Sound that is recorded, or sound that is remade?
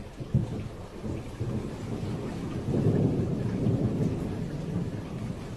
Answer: recorded